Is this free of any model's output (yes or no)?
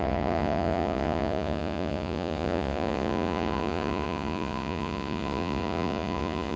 no